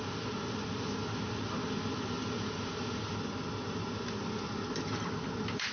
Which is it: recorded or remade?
recorded